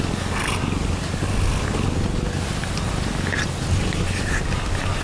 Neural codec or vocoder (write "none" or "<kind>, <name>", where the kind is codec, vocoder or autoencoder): none